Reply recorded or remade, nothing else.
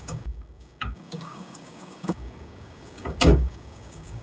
remade